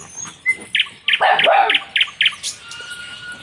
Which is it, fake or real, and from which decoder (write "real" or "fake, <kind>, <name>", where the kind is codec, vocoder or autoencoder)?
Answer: real